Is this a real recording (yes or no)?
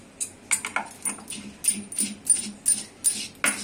yes